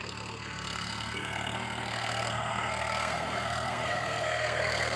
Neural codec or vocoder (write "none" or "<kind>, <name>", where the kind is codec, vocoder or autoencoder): codec, SNAC